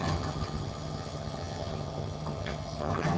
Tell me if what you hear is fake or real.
fake